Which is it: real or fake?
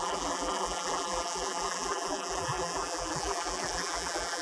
fake